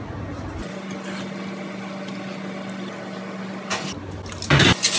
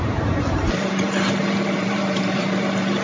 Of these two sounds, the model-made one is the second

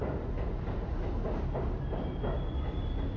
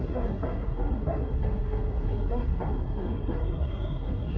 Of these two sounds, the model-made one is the second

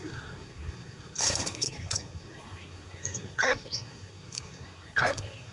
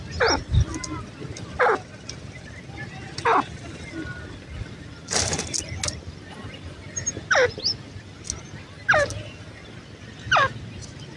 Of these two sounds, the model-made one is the first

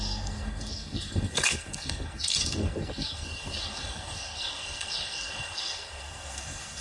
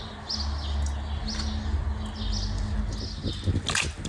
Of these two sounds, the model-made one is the first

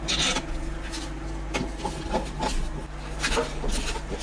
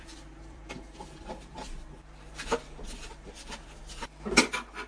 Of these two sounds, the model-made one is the second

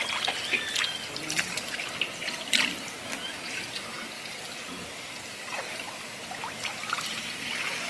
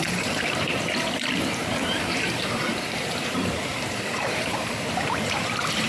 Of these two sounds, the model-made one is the second